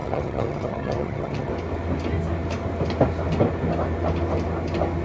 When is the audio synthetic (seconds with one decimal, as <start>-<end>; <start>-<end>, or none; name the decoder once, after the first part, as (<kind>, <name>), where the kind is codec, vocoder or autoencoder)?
0.0-1.5 (vocoder, HiFi-GAN)